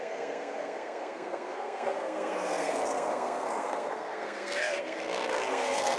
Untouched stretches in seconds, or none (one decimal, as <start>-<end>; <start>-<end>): none